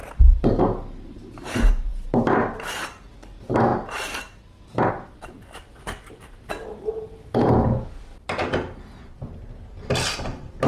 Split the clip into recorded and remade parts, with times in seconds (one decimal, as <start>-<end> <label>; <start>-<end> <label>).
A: 0.0-0.5 remade; 0.5-10.7 recorded